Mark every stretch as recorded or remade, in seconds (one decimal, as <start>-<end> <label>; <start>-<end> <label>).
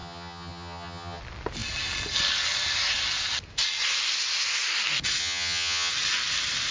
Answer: 0.0-1.2 remade; 1.2-5.2 recorded; 5.2-5.9 remade; 5.9-6.7 recorded